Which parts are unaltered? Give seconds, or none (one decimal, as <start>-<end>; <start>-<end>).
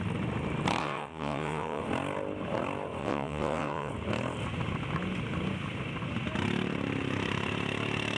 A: 0.0-0.8; 1.8-3.0; 3.9-8.2